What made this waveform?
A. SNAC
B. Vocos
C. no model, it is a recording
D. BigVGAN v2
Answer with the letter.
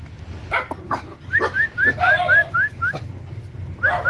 C